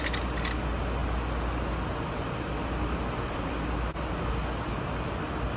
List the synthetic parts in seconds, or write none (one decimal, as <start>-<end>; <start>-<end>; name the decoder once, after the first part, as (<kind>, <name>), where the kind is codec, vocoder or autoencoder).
none